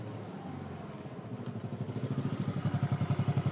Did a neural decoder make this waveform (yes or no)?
no